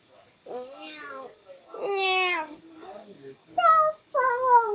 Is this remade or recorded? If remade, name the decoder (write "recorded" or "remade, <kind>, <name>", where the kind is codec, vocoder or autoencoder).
remade, codec, DAC